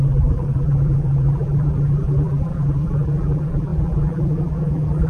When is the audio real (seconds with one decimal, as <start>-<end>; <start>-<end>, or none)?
none